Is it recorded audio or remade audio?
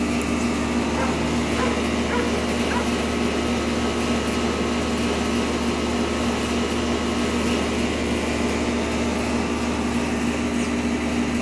recorded